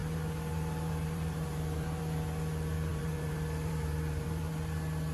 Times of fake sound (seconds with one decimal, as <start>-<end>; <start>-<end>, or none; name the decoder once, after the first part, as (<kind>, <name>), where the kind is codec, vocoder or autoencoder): 0.0-2.0 (vocoder, BigVGAN v2); 2.9-4.5